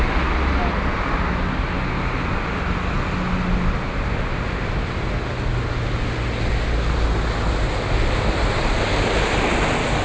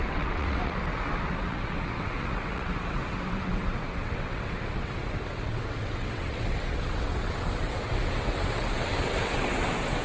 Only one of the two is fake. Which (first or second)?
second